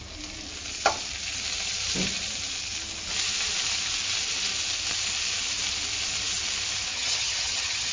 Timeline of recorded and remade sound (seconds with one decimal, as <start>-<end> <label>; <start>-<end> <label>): 0.0-6.9 recorded; 6.9-7.9 remade